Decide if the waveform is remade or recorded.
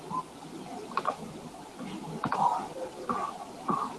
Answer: remade